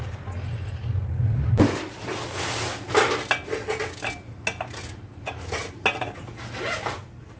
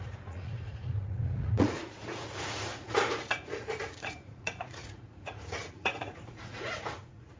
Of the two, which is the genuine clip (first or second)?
first